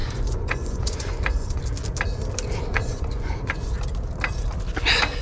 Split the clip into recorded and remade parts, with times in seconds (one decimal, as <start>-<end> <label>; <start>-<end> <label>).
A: 0.0-1.6 remade; 1.6-2.7 recorded; 2.7-3.5 remade; 3.5-5.2 recorded